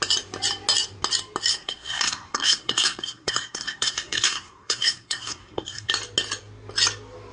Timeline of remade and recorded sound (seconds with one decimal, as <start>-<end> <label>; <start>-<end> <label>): 0.0-1.5 recorded; 1.5-5.9 remade; 5.9-7.3 recorded